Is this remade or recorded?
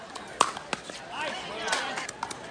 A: recorded